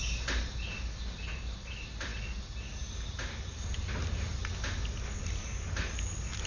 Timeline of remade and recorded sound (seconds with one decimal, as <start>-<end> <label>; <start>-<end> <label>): 0.0-6.5 recorded